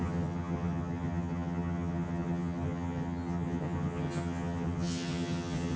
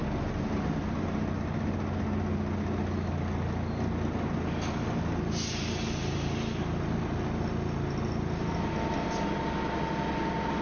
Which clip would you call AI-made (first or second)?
first